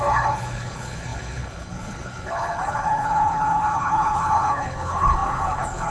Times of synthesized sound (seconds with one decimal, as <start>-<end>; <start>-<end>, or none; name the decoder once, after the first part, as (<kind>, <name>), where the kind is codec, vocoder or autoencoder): 0.0-5.9 (codec, HILCodec)